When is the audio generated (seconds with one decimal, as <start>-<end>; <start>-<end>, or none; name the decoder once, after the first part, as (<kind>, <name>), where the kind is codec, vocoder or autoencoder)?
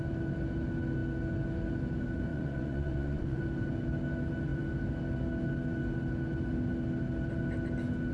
2.3-3.4 (vocoder, Vocos)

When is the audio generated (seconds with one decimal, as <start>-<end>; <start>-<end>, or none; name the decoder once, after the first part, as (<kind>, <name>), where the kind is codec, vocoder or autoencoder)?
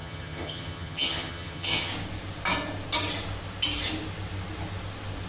0.0-1.9 (vocoder, HiFi-GAN)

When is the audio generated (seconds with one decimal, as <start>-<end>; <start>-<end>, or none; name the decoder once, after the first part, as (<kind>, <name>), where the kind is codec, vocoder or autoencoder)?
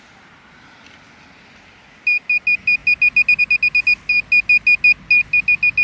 none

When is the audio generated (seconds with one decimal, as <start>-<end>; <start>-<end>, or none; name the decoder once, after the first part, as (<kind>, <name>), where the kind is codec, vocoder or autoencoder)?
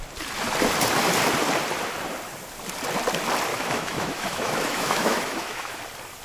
3.5-5.8 (autoencoder, DAC-VAE)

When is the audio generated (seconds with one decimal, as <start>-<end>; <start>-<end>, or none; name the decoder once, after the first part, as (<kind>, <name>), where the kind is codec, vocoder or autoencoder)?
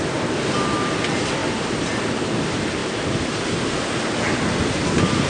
1.4-2.1 (vocoder, BigVGAN v2); 2.8-3.4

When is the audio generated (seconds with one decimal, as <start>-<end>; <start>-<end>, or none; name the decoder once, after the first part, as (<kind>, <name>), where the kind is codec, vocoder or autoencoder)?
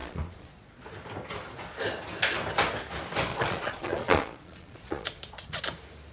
0.0-0.8 (vocoder, Vocos); 3.3-5.6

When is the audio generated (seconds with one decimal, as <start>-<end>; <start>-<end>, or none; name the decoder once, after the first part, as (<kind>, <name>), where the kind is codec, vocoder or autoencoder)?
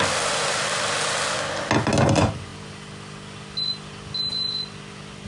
none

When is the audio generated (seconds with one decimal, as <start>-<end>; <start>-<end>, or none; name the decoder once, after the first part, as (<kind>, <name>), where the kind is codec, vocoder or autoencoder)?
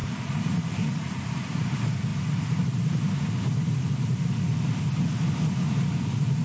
0.0-1.3 (vocoder, BigVGAN v2)